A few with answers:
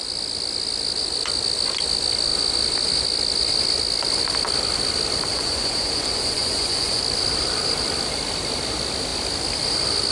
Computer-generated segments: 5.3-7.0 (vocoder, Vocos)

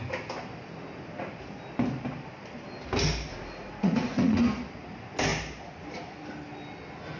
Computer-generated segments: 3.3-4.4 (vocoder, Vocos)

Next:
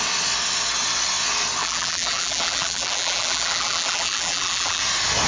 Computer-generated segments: 1.6-4.8 (vocoder, BigVGAN v2)

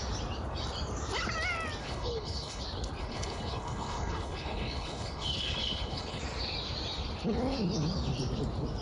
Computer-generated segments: 1.8-2.6 (codec, HILCodec); 3.0-6.2

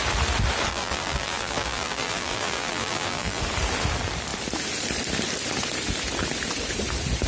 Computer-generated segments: 0.7-3.4 (vocoder, BigVGAN v2)

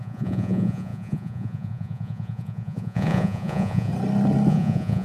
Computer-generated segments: 0.0-3.9 (vocoder, Vocos); 4.5-5.0

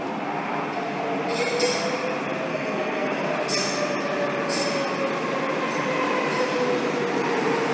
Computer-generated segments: 2.5-3.3 (codec, SNAC)